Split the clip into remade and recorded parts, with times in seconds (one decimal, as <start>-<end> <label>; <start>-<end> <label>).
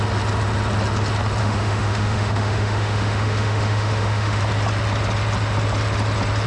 0.0-1.4 recorded; 1.4-4.4 remade; 4.4-6.5 recorded